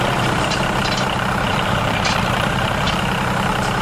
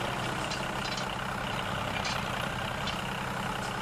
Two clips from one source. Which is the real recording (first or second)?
second